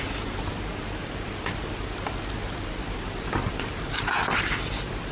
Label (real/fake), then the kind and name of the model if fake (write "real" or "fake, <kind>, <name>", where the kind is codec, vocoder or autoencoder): real